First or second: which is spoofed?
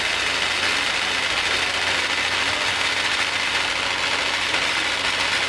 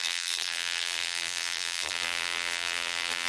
second